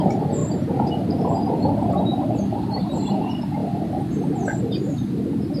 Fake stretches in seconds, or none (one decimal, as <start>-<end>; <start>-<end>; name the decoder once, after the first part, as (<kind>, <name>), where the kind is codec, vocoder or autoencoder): none